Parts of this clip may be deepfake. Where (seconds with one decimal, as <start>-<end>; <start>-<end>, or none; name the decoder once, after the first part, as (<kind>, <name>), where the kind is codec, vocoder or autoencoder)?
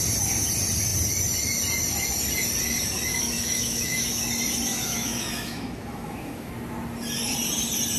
3.1-4.2 (autoencoder, DAC-VAE); 4.7-6.5